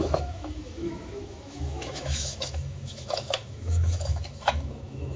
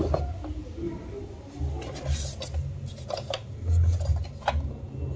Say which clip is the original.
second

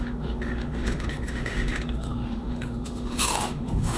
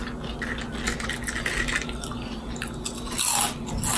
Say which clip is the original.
second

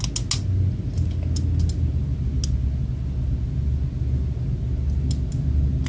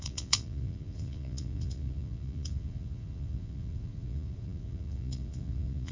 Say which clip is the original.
first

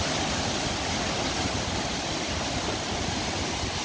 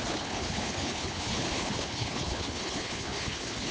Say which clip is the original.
first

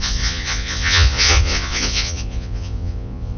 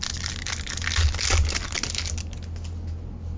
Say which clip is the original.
second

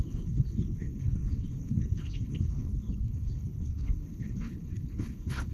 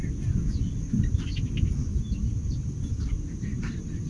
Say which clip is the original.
second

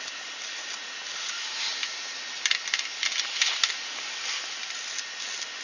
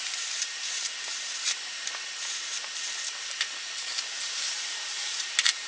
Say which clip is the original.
first